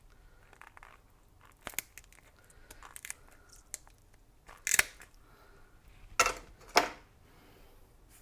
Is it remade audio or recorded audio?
recorded